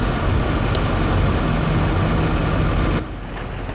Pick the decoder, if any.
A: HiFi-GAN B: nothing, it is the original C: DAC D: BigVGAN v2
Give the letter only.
B